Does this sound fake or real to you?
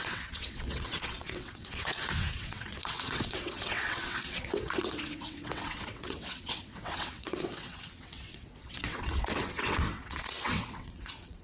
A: fake